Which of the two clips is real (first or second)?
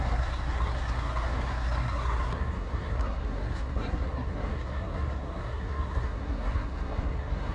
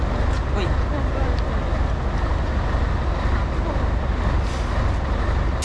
second